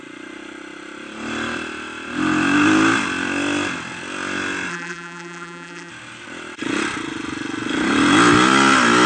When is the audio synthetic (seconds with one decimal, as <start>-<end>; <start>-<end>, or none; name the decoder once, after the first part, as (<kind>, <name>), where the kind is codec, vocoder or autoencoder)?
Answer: 4.7-5.9 (vocoder, BigVGAN v2)